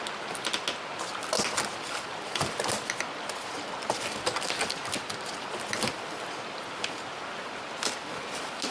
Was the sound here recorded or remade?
recorded